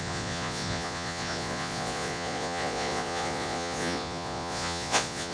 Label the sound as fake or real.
fake